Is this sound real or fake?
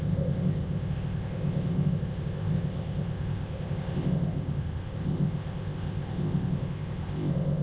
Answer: fake